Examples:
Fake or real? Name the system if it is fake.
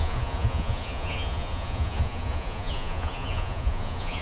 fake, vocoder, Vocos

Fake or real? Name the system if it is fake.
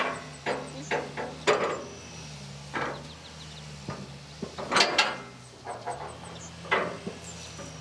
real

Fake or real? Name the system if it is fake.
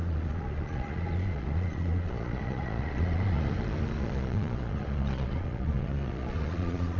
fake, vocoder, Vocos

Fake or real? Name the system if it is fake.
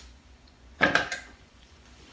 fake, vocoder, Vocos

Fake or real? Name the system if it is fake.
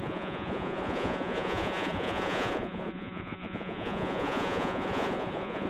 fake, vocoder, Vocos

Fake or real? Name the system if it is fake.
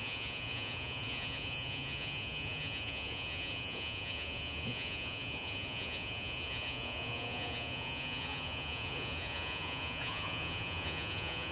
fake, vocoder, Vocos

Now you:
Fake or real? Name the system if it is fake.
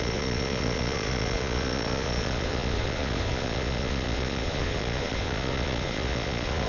fake, vocoder, Vocos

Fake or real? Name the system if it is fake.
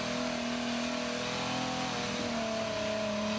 real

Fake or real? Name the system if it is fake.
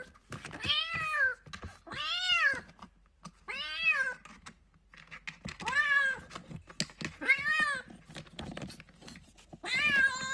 real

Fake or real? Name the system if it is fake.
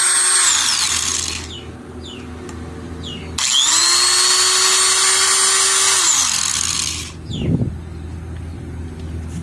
real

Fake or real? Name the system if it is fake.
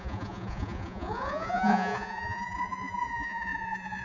fake, vocoder, Vocos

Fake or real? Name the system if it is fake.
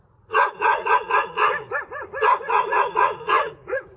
fake, vocoder, Vocos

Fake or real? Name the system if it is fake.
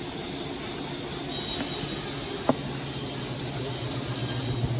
real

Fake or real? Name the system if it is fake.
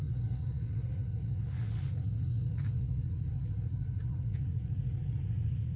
fake, vocoder, Vocos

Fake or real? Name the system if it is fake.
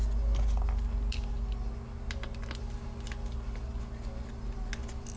real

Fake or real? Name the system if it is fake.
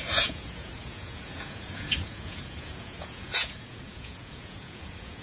fake, vocoder, Vocos